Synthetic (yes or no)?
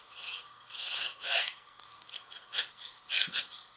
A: yes